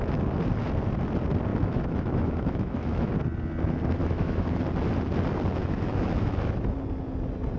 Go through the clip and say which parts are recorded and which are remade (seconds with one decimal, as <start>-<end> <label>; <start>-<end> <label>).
0.0-1.5 recorded; 1.5-3.1 remade; 3.1-4.0 recorded; 4.0-4.6 remade; 4.6-5.6 recorded; 5.6-6.8 remade; 6.8-7.6 recorded